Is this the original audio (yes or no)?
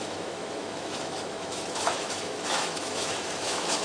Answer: no